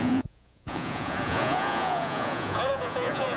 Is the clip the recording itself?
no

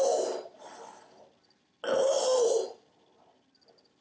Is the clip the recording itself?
yes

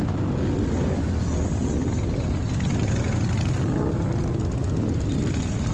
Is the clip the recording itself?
yes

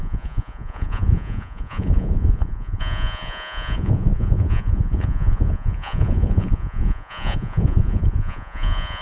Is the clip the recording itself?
no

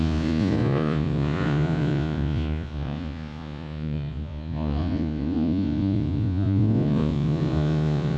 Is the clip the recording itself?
no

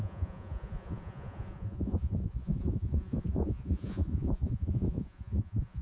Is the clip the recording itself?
no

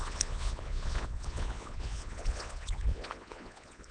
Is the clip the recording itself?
no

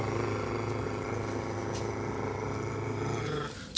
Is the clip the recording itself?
yes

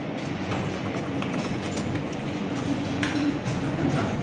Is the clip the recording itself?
no